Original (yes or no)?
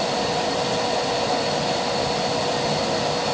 yes